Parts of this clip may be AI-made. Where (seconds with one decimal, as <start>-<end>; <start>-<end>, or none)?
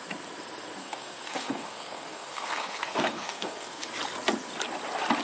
0.8-3.9